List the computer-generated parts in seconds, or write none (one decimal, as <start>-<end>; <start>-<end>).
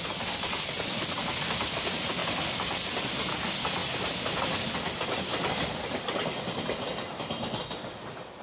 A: none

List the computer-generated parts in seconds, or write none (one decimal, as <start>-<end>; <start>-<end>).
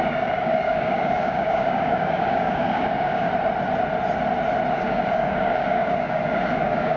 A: 0.0-3.3; 4.7-7.0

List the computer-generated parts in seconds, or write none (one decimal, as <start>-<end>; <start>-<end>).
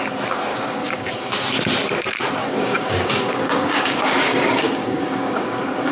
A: 0.5-1.1; 2.4-5.9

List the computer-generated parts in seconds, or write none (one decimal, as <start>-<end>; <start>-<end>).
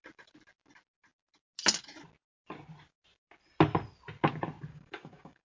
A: 4.7-5.4